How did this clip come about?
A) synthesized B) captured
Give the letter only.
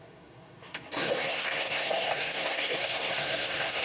A